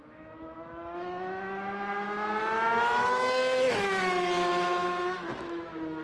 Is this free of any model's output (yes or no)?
no